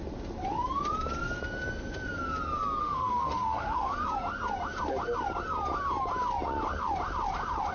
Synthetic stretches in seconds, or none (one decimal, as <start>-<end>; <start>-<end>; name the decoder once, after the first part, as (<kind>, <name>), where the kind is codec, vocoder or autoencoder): 2.8-3.9 (autoencoder, DAC-VAE)